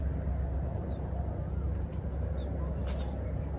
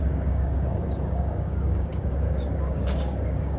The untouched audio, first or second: first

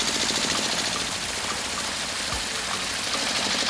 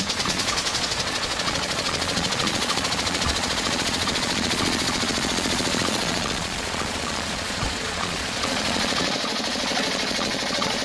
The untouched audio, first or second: first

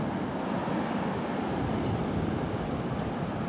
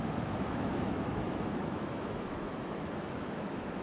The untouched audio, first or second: first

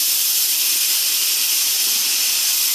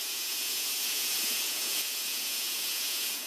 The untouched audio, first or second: first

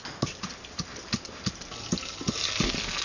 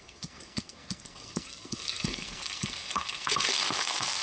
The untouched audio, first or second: first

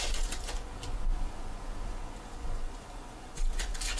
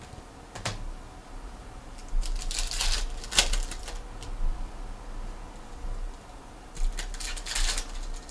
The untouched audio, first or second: second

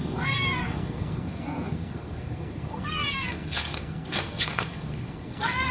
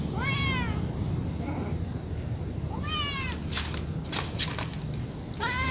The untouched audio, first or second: second